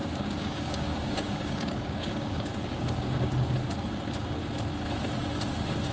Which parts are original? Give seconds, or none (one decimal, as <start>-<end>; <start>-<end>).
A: 3.5-5.9